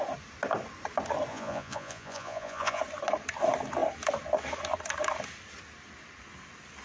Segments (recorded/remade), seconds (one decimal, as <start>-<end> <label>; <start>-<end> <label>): 0.0-1.3 recorded; 1.3-2.8 remade; 2.8-6.8 recorded